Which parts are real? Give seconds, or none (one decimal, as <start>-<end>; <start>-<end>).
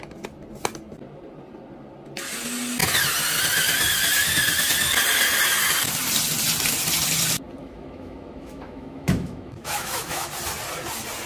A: 0.0-7.6; 10.3-11.3